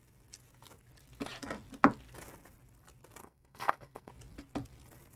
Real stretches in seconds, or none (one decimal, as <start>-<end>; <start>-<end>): 0.0-3.2; 4.1-5.2